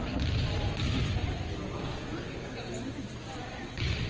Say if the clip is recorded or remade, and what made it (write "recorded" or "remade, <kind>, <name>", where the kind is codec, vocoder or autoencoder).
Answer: recorded